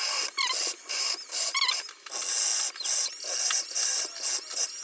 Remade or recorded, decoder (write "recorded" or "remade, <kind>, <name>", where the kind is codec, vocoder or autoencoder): recorded